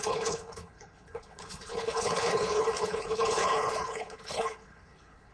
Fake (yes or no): yes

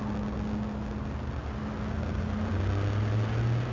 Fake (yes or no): no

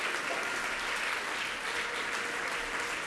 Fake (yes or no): no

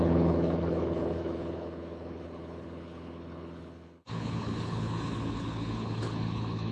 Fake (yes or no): yes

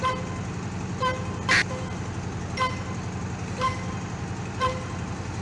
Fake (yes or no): no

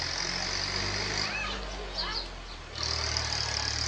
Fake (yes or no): no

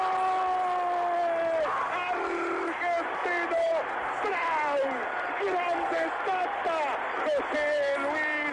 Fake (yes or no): no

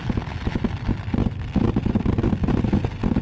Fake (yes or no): no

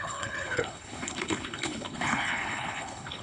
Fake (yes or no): yes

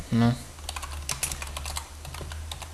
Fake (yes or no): no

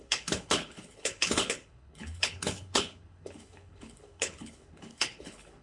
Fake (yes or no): yes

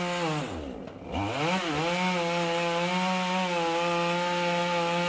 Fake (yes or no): no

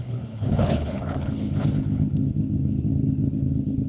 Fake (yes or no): yes